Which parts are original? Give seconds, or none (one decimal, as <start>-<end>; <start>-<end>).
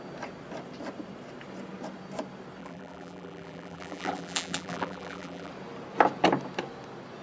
0.0-2.6; 5.5-7.2